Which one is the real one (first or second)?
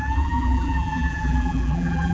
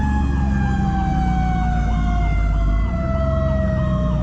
second